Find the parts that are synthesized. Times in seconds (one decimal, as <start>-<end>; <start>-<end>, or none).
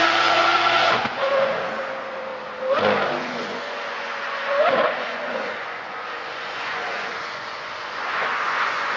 0.0-2.3; 3.2-9.0